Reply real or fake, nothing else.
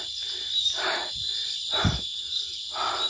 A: real